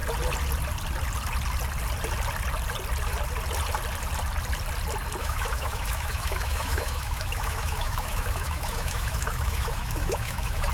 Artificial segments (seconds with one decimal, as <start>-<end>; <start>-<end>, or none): 5.2-10.7